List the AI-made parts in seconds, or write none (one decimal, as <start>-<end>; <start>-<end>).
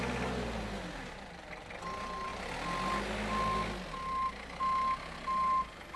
none